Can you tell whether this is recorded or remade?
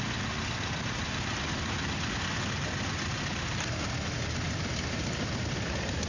recorded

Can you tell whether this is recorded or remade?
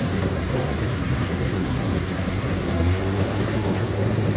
remade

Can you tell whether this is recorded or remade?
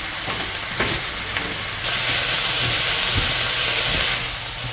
recorded